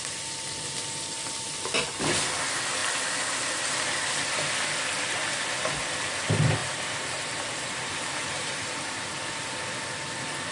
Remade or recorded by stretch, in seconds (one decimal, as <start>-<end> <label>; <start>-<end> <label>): 0.0-6.6 recorded; 6.6-8.8 remade; 8.8-10.5 recorded